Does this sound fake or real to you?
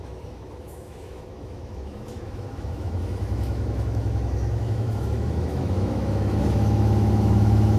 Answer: fake